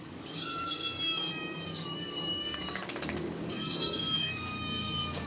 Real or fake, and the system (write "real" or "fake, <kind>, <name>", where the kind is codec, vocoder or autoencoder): fake, codec, DAC